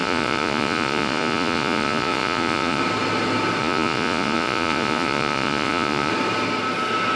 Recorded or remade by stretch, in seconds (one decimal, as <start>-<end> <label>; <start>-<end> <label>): 0.0-2.8 remade; 2.8-3.6 recorded; 3.6-6.1 remade; 6.1-7.2 recorded